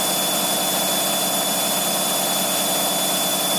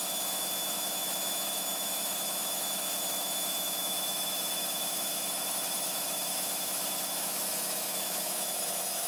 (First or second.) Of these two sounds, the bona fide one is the first